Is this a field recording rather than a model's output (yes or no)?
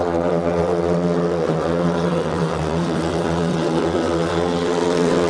no